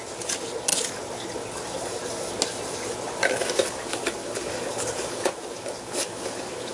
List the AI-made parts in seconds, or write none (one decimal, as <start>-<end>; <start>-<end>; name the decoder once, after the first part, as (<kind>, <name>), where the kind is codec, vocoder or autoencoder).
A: 3.2-6.7 (codec, DAC)